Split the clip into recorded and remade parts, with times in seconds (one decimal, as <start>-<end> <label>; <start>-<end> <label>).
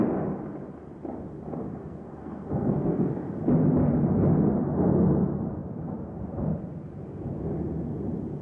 0.0-1.7 recorded; 1.7-3.1 remade; 3.1-8.4 recorded